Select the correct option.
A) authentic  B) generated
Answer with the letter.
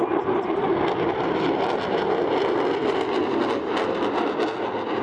A